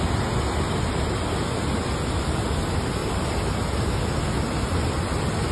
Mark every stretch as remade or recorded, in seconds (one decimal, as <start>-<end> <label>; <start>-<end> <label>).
0.0-5.5 recorded